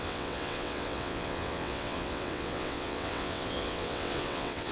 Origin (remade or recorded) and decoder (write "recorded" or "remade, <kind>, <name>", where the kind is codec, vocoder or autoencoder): remade, vocoder, WaveNeXt